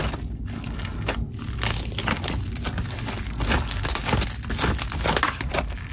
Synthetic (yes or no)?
no